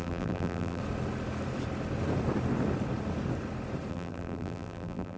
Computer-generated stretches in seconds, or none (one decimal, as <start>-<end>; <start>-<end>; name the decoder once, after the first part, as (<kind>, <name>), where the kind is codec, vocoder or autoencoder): 0.0-0.8 (vocoder, BigVGAN v2); 3.9-5.2